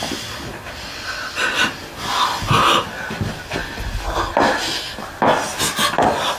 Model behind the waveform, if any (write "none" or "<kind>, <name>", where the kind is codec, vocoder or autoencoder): none